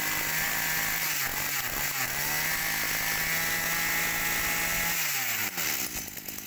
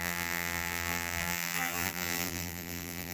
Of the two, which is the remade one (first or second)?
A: second